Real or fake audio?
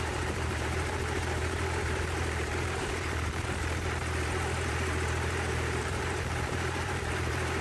fake